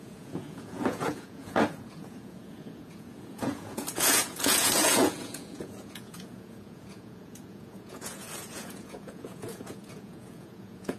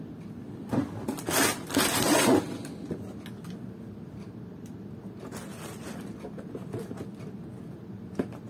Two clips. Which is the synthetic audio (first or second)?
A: first